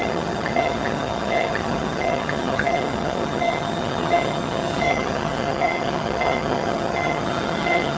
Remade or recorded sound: remade